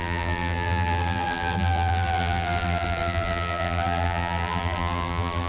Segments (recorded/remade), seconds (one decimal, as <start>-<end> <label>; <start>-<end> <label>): 0.0-5.5 remade

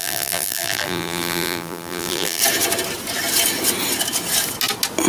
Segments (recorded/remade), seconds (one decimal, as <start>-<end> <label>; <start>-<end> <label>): 0.0-2.4 remade; 2.4-5.1 recorded

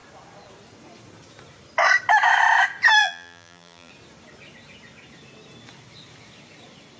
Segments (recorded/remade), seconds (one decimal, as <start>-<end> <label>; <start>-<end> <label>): 0.0-3.0 recorded; 3.0-3.9 remade; 3.9-7.0 recorded

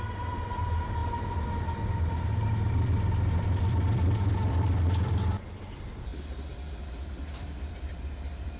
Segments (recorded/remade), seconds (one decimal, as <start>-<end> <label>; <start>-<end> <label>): 0.0-8.6 remade